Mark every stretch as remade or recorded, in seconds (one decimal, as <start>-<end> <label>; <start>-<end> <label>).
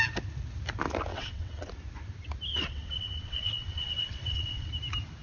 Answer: 0.0-1.1 recorded; 1.1-1.7 remade; 1.7-2.5 recorded; 2.5-4.7 remade; 4.7-5.2 recorded